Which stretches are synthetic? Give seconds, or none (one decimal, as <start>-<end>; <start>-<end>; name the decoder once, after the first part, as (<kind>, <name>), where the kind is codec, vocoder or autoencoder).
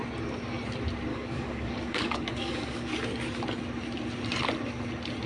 1.1-2.9 (codec, DAC)